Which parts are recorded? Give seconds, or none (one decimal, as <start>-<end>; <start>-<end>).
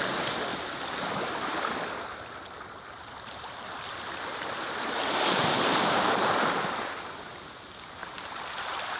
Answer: 0.0-5.7; 6.3-8.0